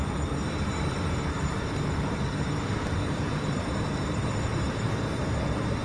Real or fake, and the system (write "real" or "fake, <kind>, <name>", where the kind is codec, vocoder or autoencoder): fake, vocoder, BigVGAN v2